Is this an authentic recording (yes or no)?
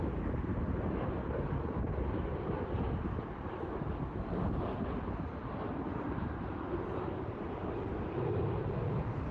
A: yes